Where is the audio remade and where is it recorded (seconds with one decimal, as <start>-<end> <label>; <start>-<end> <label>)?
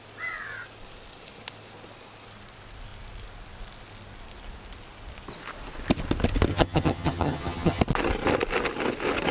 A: 0.0-6.5 recorded; 6.5-7.8 remade; 7.8-9.3 recorded